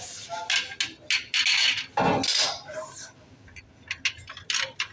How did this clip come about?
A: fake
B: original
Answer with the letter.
B